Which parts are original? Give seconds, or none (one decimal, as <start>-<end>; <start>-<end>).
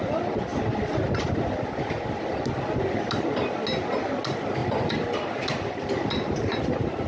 0.0-7.1